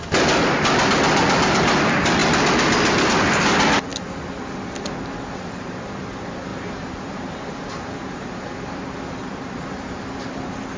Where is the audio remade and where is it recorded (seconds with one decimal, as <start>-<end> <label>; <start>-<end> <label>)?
0.0-6.5 recorded; 6.5-8.8 remade; 8.8-10.8 recorded